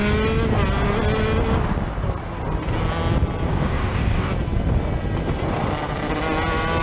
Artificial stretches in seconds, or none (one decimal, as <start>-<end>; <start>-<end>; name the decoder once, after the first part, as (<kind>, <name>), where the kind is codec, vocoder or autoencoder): 3.5-4.3 (codec, DAC)